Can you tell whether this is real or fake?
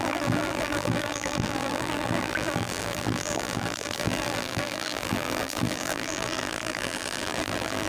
fake